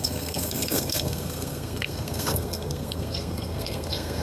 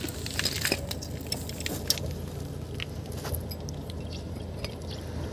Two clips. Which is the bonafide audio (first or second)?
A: second